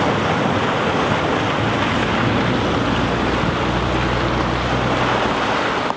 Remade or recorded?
recorded